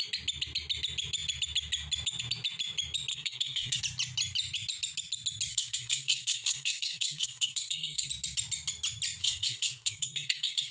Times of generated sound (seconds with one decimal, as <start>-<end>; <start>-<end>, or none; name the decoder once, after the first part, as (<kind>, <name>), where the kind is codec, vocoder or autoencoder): 3.1-3.8 (codec, SNAC); 5.5-8.1; 9.2-10.7